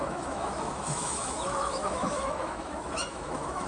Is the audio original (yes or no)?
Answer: no